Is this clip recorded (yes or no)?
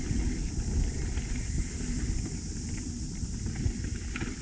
no